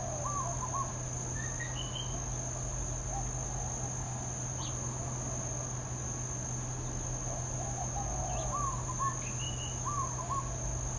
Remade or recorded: recorded